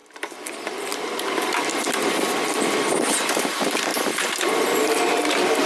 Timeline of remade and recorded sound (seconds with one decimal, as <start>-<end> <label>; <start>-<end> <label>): 0.0-0.5 recorded; 0.5-0.9 remade; 0.9-1.8 recorded; 1.8-5.7 remade